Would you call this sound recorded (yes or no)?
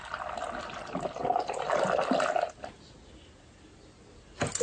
yes